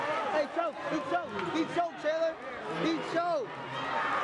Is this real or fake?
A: real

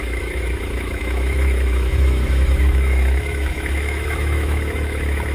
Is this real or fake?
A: fake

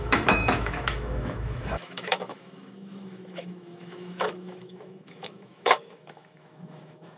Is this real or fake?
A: fake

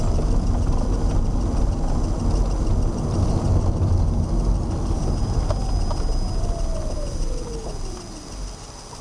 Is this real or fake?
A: real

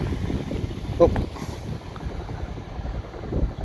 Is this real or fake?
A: real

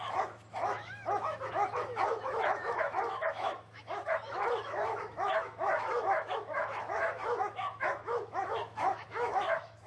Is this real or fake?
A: fake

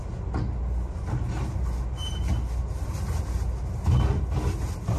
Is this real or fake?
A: real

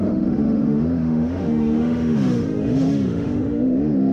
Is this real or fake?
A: fake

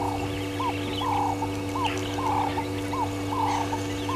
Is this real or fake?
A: real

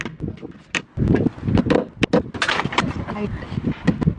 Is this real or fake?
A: real